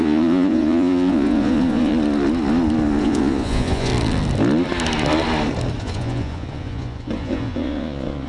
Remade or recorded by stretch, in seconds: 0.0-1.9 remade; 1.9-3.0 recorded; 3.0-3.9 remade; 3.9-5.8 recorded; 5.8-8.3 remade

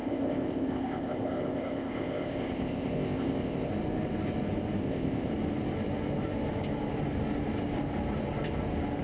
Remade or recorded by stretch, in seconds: 0.0-3.7 remade; 3.7-4.8 recorded; 4.8-5.3 remade; 5.3-9.0 recorded

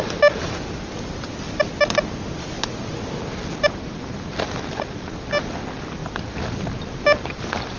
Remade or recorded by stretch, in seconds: 0.0-7.8 recorded